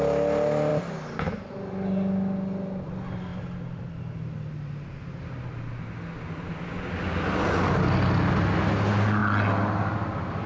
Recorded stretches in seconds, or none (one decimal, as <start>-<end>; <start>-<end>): 0.0-10.5